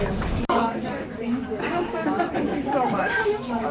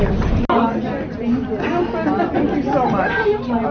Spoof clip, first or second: first